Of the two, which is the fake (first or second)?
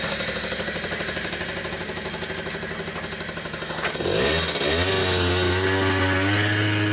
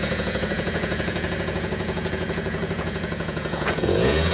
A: second